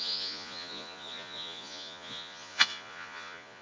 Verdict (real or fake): fake